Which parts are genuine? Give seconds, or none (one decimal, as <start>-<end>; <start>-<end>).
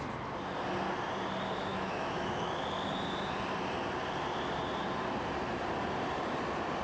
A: 0.0-1.7; 2.5-6.8